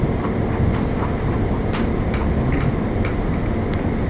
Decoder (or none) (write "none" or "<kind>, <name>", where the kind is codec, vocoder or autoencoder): none